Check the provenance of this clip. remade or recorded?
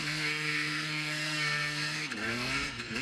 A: remade